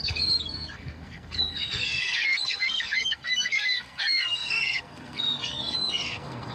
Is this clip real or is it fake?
fake